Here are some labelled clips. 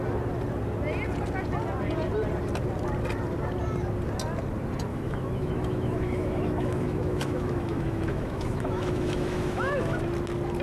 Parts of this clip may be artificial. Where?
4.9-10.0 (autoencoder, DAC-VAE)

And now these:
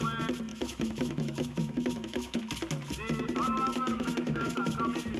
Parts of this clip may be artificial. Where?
0.5-2.4 (autoencoder, DAC-VAE); 3.9-4.7

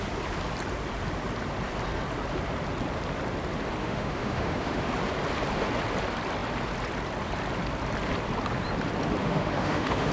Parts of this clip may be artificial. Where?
3.8-4.9 (autoencoder, DAC-VAE); 9.2-10.1

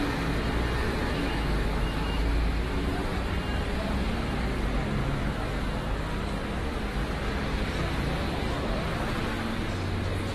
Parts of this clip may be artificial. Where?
1.0-2.9 (autoencoder, DAC-VAE); 5.0-5.5

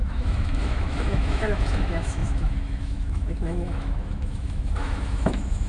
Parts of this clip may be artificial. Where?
0.0-5.7 (autoencoder, DAC-VAE)

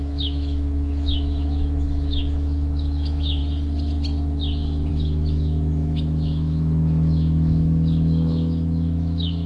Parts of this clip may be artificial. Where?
0.0-3.4 (autoencoder, DAC-VAE); 4.9-9.5

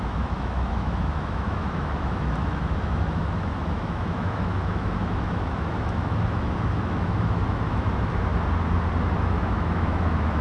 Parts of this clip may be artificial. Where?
0.0-8.3 (autoencoder, DAC-VAE); 9.2-10.4